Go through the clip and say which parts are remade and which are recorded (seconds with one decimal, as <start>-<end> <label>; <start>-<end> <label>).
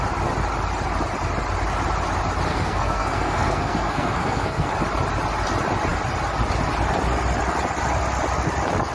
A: 0.0-2.5 recorded; 2.5-4.7 remade; 4.7-8.9 recorded